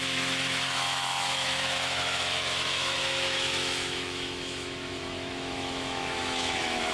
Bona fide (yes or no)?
no